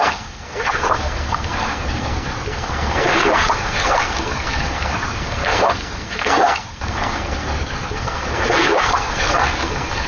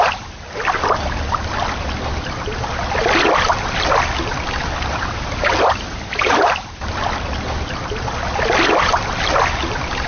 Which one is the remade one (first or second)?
first